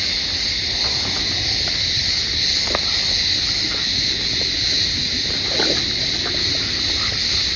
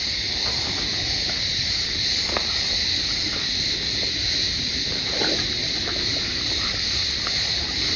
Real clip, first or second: first